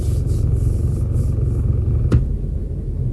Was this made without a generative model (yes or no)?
no